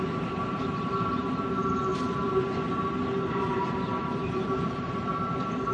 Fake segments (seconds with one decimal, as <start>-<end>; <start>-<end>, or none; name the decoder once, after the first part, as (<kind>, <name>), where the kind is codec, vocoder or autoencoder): 0.0-1.9 (vocoder, BigVGAN v2); 3.3-5.7